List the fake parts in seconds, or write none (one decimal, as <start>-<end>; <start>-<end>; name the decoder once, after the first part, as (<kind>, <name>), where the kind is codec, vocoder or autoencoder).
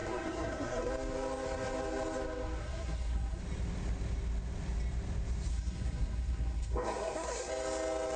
0.0-0.9 (codec, SNAC); 2.6-3.4; 5.5-7.5